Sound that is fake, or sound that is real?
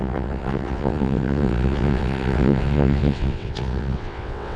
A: fake